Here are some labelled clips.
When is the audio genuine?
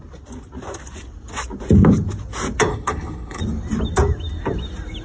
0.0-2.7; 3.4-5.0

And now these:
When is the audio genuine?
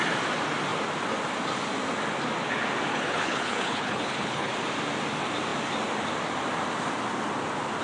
0.0-2.9; 4.5-7.8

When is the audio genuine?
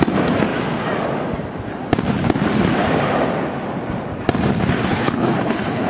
0.0-4.9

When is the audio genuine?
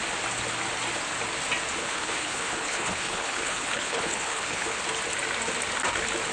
0.0-1.8; 4.8-6.3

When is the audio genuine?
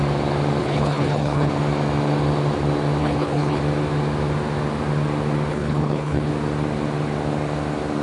0.0-0.6; 1.5-3.0; 3.6-5.5; 6.3-8.0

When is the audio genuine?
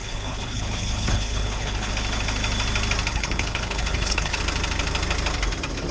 1.9-3.1; 4.4-5.9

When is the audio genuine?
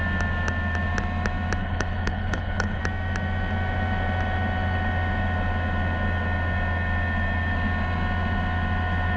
0.0-1.6; 2.8-9.2